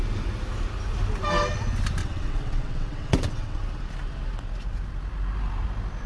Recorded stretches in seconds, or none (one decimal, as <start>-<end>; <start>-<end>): 0.0-2.0; 3.6-6.1